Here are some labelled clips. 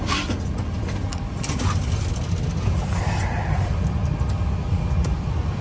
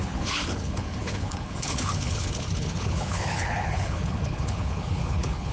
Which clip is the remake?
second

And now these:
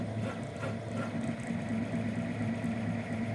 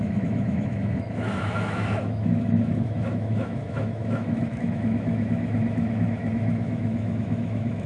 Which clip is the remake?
second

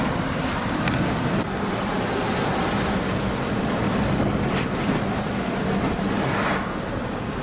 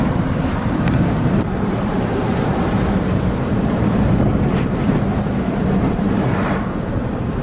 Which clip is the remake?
second